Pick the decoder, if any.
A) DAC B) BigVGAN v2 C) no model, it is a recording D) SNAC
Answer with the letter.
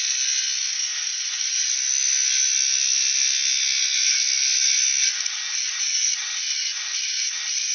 C